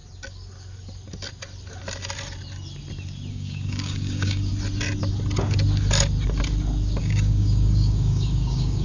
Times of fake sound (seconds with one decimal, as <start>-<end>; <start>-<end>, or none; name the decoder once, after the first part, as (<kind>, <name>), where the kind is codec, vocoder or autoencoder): 3.3-4.5 (codec, DAC); 7.0-8.8

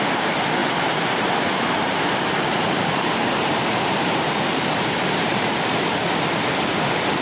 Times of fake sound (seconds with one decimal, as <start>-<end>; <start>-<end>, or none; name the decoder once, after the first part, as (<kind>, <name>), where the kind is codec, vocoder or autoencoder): 2.5-5.8 (vocoder, BigVGAN v2)

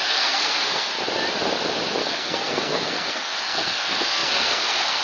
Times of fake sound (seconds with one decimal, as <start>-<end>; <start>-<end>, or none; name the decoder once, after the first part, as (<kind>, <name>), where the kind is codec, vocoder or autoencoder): 0.0-0.9 (codec, SNAC); 2.0-5.0